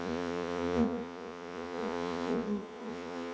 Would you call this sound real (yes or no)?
no